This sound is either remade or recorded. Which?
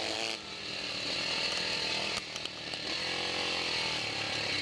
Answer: recorded